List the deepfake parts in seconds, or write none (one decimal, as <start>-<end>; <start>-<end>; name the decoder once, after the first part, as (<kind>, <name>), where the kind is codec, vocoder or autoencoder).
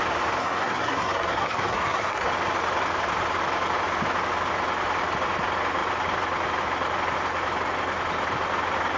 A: 0.4-2.3 (codec, SNAC)